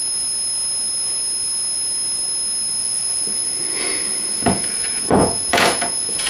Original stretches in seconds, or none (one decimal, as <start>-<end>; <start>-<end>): 0.0-2.8